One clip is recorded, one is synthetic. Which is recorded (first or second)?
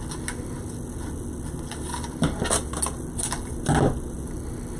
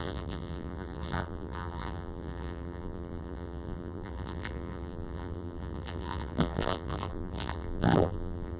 first